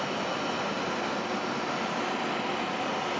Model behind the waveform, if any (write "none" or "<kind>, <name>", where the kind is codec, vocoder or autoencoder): none